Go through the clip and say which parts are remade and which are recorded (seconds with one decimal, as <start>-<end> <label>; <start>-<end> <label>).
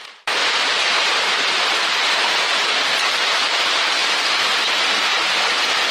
0.0-0.4 recorded; 0.4-1.2 remade; 1.2-5.9 recorded